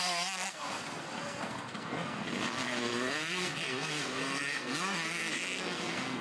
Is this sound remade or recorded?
remade